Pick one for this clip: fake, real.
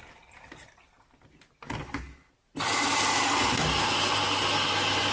real